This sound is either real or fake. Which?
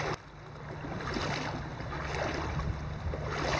fake